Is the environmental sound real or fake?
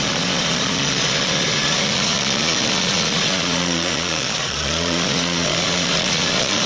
fake